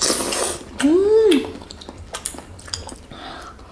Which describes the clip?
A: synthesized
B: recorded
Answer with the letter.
B